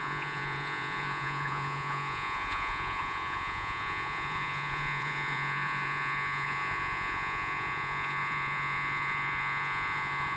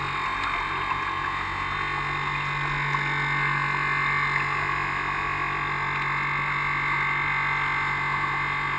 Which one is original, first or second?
second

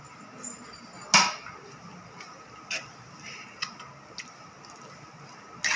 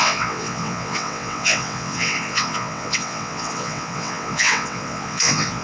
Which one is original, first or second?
first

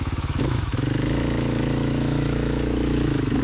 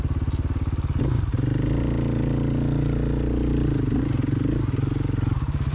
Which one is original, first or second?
second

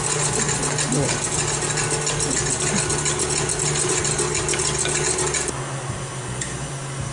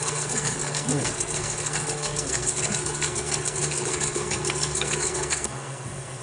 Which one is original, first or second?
first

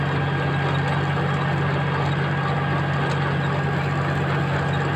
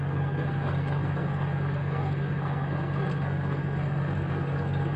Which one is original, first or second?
first